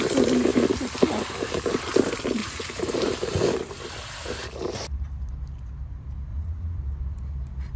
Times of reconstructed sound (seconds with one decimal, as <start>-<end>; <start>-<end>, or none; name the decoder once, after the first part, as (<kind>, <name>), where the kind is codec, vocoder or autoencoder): 2.4-3.1 (vocoder, Vocos); 6.3-6.8